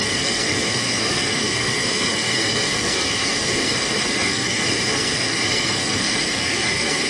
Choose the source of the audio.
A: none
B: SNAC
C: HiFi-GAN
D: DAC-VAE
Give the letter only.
B